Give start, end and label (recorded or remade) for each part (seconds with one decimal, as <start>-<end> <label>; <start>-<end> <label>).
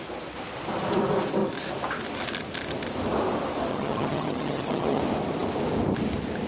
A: 0.0-3.7 recorded; 3.7-5.0 remade; 5.0-6.5 recorded